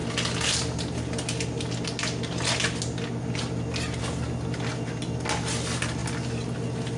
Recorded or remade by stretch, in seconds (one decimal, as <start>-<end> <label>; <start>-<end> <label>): 0.0-7.0 recorded